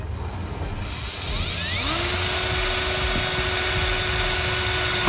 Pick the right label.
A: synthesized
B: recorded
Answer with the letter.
B